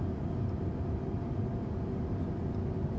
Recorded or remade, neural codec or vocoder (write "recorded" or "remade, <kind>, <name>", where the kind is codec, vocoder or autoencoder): recorded